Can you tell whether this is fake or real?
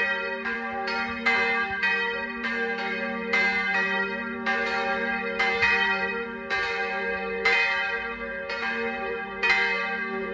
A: fake